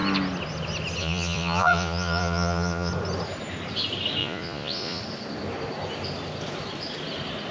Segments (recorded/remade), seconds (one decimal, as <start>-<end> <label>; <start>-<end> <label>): 0.0-1.0 recorded; 1.0-2.9 remade; 2.9-4.2 recorded; 4.2-5.0 remade; 5.0-7.5 recorded

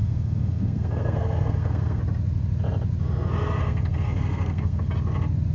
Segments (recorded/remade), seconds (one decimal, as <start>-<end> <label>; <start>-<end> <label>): 0.0-2.0 remade; 2.0-3.6 recorded; 3.6-4.8 remade; 4.8-5.5 recorded

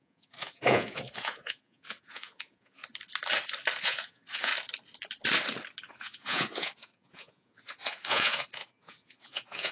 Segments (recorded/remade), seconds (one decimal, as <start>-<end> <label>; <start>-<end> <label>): 0.0-2.8 remade; 2.8-3.8 recorded; 3.8-4.5 remade; 4.5-5.9 recorded; 5.9-9.7 remade

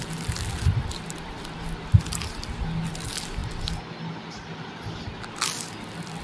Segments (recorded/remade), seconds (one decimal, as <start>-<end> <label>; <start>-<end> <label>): 0.0-6.2 recorded

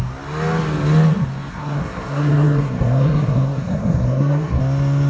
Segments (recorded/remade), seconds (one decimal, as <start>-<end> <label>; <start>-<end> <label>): 0.0-1.5 recorded; 1.5-4.6 remade; 4.6-5.1 recorded

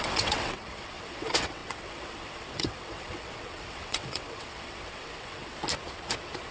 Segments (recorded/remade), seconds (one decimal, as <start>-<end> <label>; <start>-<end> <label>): 0.0-5.6 remade; 5.6-6.5 recorded

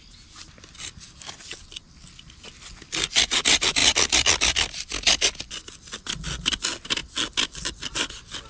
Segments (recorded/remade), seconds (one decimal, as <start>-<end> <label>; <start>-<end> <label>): 0.0-8.5 recorded

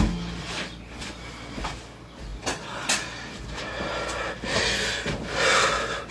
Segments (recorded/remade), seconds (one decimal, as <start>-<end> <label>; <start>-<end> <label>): 0.0-6.1 recorded